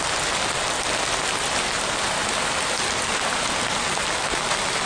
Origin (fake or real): real